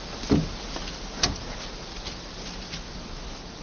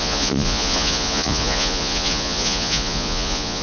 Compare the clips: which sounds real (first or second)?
first